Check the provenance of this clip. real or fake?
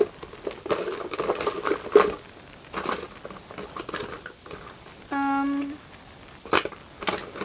real